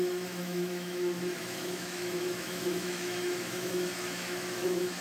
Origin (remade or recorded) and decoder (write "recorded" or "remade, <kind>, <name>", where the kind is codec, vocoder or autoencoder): remade, autoencoder, DAC-VAE